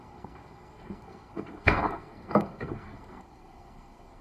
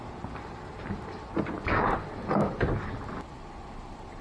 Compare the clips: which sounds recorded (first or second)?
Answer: second